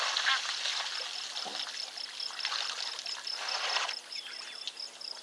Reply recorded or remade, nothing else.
recorded